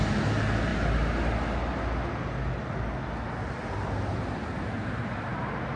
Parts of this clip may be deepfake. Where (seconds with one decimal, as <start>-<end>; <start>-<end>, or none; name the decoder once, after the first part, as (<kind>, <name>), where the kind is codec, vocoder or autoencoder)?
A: none